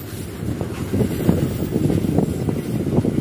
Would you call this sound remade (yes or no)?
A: no